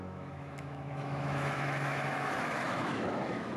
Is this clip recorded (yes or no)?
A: no